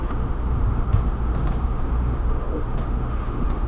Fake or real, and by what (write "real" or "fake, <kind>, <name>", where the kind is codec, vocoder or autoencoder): fake, autoencoder, DAC-VAE